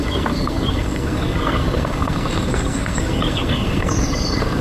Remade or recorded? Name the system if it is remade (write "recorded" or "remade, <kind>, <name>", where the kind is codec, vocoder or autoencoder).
remade, codec, SNAC